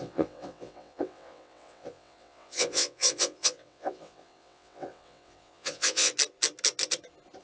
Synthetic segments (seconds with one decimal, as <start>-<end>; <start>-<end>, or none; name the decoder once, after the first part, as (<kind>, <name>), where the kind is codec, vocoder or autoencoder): 0.0-6.1 (vocoder, WaveNeXt)